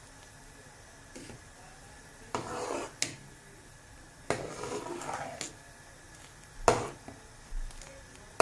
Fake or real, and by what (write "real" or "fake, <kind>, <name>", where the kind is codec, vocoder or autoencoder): real